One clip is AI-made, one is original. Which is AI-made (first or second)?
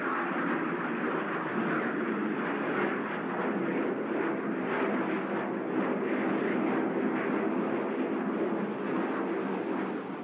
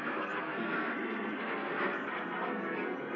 second